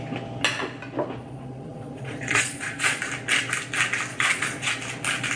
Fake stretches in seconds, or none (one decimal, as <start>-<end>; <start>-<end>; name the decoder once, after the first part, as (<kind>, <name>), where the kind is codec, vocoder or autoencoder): 1.2-3.0 (vocoder, Vocos); 4.1-4.7